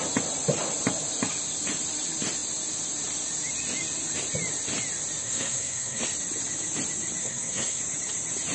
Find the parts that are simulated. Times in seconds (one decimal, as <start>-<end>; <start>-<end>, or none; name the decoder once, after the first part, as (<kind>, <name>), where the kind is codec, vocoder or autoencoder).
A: 5.2-6.0 (codec, SNAC); 7.2-7.8